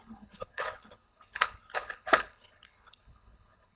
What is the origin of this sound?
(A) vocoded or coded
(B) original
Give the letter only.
A